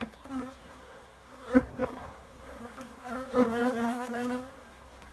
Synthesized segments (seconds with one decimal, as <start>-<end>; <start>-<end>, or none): 0.0-5.1